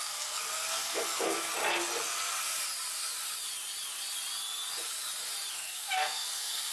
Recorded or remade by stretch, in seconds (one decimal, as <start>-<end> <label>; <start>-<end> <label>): 0.0-1.5 remade; 1.5-5.5 recorded; 5.5-6.7 remade